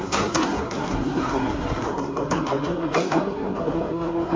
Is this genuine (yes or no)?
no